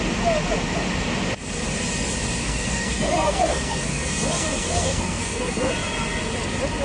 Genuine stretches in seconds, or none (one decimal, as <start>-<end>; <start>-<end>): 0.0-2.4; 5.7-6.8